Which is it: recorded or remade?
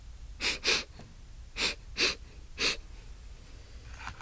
recorded